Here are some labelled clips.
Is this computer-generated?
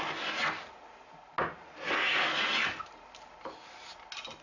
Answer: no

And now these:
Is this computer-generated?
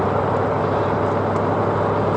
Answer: no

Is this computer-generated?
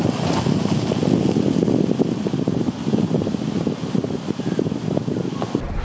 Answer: no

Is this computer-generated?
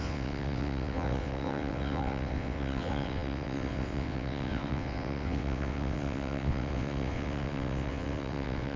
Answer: yes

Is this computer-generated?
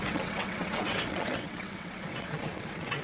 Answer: yes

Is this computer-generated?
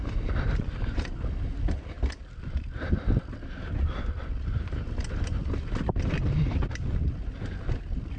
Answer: no